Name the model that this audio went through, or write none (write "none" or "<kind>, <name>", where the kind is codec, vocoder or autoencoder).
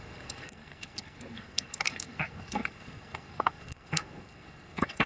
codec, SNAC